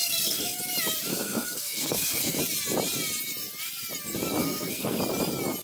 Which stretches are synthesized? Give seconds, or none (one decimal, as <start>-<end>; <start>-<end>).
0.0-0.6; 1.1-2.4; 4.4-5.0